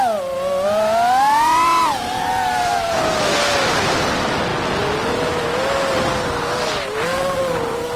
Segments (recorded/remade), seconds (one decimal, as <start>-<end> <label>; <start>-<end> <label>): 0.0-1.8 recorded; 1.8-2.3 remade; 2.3-8.0 recorded